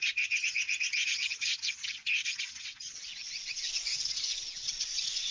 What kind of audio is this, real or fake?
fake